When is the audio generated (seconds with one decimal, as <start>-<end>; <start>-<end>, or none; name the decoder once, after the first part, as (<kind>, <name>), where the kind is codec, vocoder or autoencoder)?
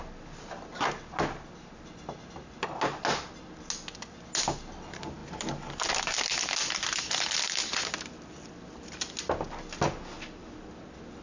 none